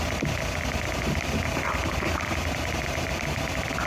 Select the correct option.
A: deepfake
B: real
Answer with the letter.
B